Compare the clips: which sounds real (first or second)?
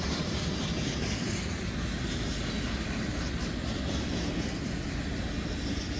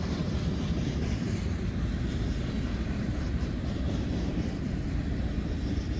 first